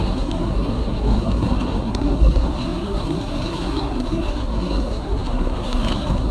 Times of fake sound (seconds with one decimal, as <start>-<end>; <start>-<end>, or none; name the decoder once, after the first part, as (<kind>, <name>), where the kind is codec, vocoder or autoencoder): 0.0-6.3 (codec, SNAC)